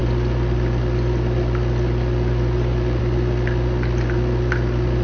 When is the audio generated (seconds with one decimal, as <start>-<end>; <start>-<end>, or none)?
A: none